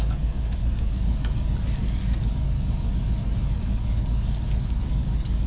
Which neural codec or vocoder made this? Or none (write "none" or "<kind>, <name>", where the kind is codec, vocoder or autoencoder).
codec, DAC